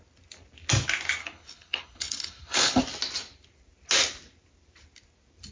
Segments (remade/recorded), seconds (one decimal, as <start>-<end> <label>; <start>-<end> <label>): 0.0-1.2 recorded; 1.2-2.8 remade; 2.8-5.5 recorded